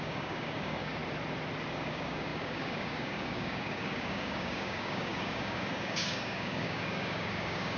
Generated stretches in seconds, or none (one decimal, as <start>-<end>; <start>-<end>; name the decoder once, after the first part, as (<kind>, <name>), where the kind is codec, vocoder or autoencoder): 0.0-1.0 (codec, DAC); 1.7-7.8